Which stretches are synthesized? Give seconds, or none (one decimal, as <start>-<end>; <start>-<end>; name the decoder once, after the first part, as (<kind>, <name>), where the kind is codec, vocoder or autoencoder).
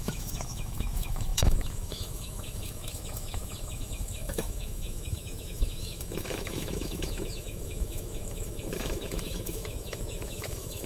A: 0.0-10.9 (autoencoder, DAC-VAE)